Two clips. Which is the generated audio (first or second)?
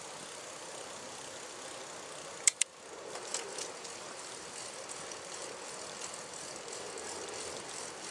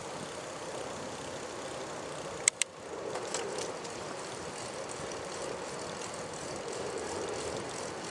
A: second